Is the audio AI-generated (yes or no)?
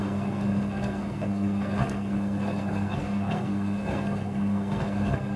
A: yes